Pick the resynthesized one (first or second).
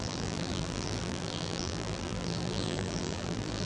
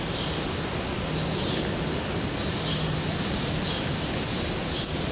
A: first